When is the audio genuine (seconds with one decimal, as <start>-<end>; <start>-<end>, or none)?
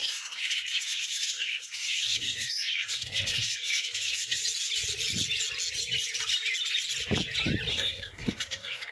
4.4-7.7